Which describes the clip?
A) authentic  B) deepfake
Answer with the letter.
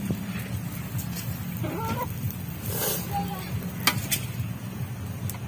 A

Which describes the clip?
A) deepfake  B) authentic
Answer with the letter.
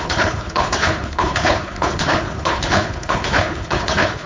A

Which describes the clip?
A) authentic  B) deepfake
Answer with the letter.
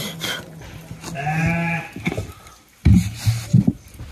A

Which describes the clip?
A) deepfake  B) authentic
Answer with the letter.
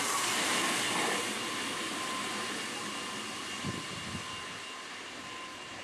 B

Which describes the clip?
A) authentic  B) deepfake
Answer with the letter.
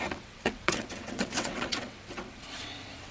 B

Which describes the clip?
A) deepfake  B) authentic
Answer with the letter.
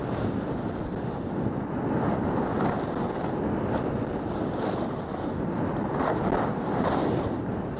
B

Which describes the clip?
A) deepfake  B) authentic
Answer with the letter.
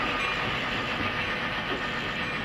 B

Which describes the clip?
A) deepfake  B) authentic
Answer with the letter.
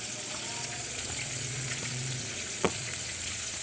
A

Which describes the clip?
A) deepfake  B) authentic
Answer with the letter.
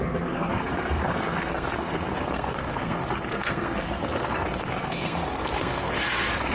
A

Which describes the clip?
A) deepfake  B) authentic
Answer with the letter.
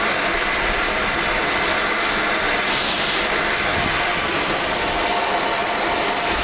B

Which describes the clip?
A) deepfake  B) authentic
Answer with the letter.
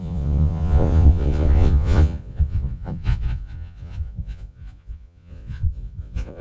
A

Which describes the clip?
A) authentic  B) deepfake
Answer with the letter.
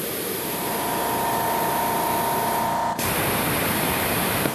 B